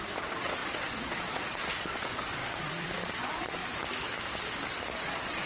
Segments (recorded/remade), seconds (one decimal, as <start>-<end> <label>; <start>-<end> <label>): 0.0-3.6 remade; 3.6-5.0 recorded; 5.0-5.5 remade